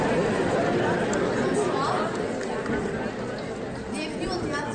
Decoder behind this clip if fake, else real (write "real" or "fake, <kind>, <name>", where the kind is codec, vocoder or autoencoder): real